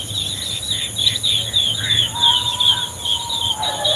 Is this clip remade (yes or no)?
no